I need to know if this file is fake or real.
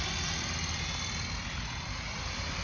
real